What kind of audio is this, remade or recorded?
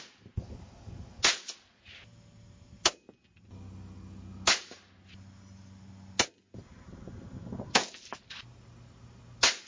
recorded